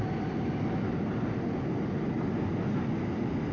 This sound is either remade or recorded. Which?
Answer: recorded